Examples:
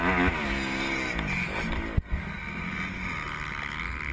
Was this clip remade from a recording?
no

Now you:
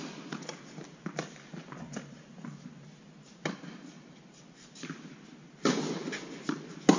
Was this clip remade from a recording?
no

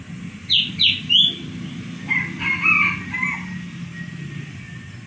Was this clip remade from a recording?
no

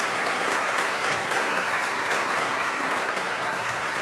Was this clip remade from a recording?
yes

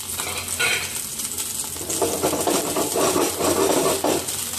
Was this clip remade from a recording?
no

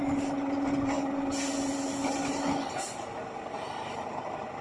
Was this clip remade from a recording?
no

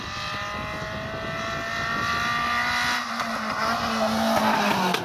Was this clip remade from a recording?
no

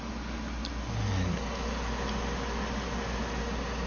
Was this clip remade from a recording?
no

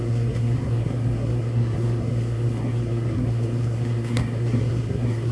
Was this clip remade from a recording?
yes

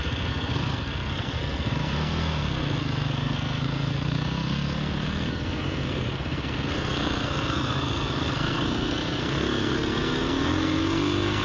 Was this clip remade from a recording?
yes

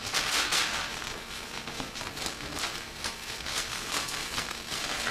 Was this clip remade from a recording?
yes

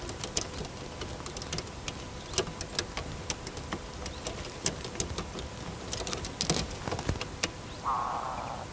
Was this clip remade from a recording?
no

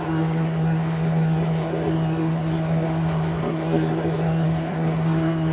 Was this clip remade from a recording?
yes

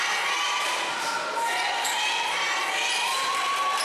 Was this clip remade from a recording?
no